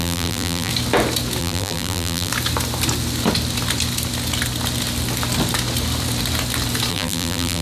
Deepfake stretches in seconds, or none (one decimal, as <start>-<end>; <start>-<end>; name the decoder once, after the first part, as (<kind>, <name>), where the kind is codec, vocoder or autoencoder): 0.0-0.7 (vocoder, BigVGAN v2); 1.4-2.3; 6.9-7.6